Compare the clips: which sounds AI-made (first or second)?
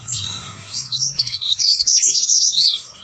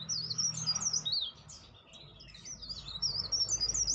first